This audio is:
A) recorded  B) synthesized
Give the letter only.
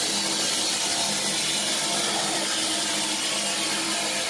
A